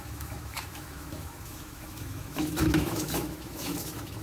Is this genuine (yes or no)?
no